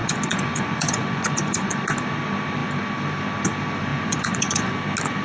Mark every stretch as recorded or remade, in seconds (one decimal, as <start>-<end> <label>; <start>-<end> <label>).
0.0-1.8 remade; 1.8-3.9 recorded; 3.9-4.7 remade; 4.7-5.2 recorded